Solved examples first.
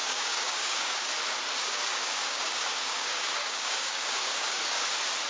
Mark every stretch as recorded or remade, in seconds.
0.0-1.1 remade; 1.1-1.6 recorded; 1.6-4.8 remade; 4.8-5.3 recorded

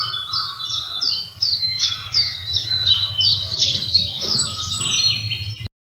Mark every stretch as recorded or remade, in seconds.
0.0-1.3 recorded; 1.3-4.9 remade; 4.9-6.0 recorded

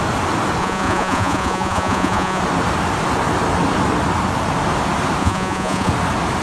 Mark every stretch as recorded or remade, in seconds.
0.0-0.6 recorded; 0.6-2.4 remade; 2.4-5.2 recorded; 5.2-5.9 remade; 5.9-6.4 recorded

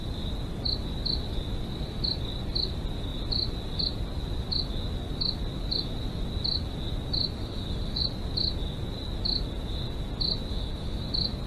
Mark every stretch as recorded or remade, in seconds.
0.0-7.4 recorded; 7.4-8.0 remade; 8.0-10.5 recorded; 10.5-11.1 remade; 11.1-11.5 recorded

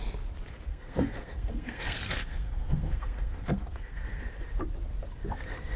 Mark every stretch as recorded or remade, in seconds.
0.0-0.7 recorded; 0.7-4.2 remade; 4.2-5.8 recorded